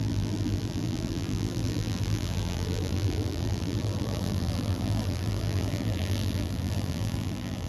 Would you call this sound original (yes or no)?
no